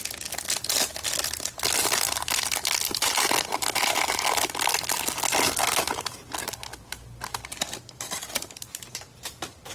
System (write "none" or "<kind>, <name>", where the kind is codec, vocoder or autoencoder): none